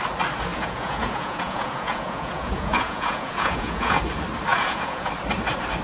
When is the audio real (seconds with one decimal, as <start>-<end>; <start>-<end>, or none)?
0.0-0.5; 4.0-4.5; 5.1-5.8